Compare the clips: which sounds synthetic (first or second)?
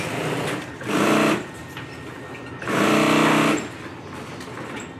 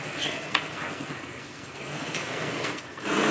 second